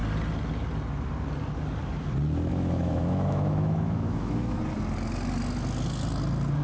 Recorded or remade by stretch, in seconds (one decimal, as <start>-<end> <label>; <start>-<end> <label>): 0.0-2.5 recorded; 2.5-4.6 remade; 4.6-6.6 recorded